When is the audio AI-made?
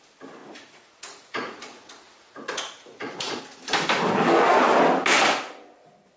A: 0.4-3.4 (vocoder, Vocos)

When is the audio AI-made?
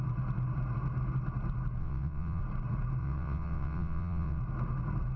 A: 1.8-2.4 (vocoder, WaveNeXt); 3.0-4.4